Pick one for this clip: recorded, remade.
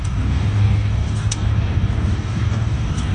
remade